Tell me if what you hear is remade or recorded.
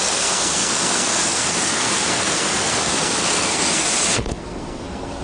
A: remade